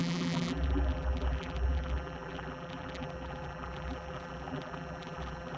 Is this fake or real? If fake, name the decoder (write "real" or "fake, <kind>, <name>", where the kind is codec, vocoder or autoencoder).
fake, vocoder, BigVGAN v2